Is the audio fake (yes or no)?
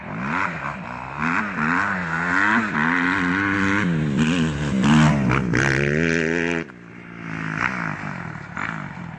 no